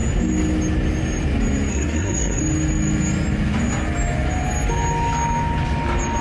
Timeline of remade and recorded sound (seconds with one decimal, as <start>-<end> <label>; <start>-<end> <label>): 0.0-1.7 recorded; 1.7-2.4 remade; 2.4-6.2 recorded